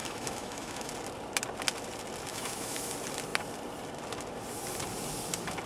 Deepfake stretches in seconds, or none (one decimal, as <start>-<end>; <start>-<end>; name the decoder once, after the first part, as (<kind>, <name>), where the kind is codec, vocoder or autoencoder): 0.0-0.9 (autoencoder, DAC-VAE); 2.3-2.9